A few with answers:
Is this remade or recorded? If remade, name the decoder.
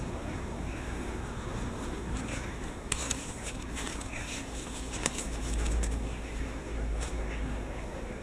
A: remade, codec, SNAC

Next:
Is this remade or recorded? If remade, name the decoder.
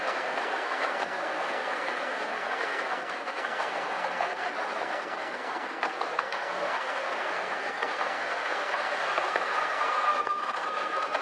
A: remade, codec, SNAC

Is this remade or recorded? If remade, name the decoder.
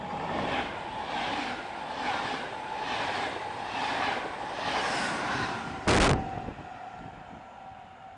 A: recorded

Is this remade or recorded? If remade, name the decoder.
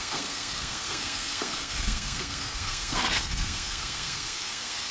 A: remade, codec, SNAC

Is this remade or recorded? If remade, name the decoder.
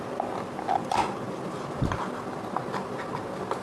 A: recorded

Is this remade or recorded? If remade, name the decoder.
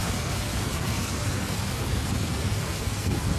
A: remade, codec, SNAC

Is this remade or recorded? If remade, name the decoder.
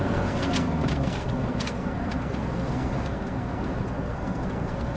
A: remade, codec, SNAC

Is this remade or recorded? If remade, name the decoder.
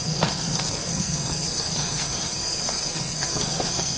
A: remade, codec, SNAC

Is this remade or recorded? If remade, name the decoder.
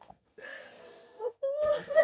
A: remade, codec, SNAC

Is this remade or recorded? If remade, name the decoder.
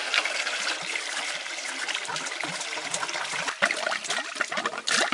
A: recorded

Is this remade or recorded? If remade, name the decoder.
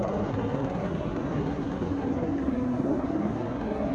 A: remade, codec, SNAC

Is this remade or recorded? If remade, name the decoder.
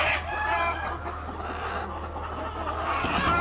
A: recorded